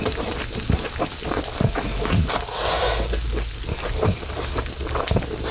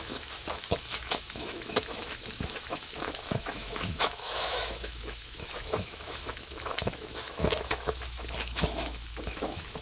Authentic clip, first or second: first